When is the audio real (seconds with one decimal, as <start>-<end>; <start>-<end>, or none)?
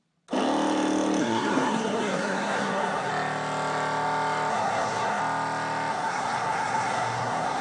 0.0-1.2; 3.1-4.5; 5.2-5.9